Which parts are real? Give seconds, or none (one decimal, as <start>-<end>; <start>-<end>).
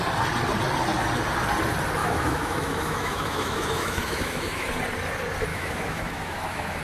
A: 0.0-2.0; 4.7-5.5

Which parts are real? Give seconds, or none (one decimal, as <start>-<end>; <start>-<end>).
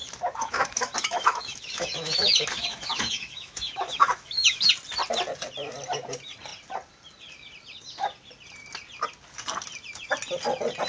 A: 4.7-10.9